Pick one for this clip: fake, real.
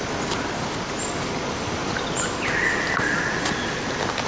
real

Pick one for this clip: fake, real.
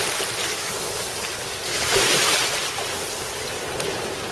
real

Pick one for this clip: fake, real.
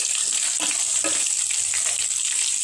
real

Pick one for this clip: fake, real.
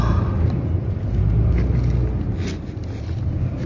real